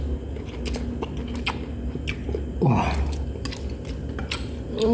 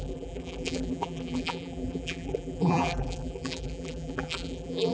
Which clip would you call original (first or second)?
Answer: first